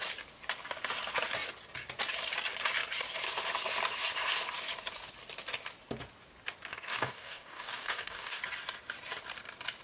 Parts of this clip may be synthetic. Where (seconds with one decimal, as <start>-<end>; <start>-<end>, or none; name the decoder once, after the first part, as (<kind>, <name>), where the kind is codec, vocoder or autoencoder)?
6.7-8.4 (codec, DAC)